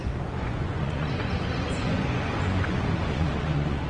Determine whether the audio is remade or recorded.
remade